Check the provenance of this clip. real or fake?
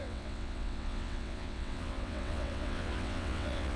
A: fake